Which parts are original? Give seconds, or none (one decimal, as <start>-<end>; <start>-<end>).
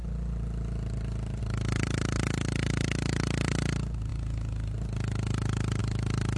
0.0-6.4